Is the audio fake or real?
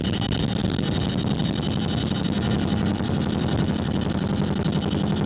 real